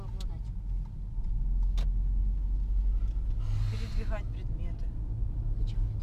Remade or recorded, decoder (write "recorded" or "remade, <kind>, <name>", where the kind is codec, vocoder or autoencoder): recorded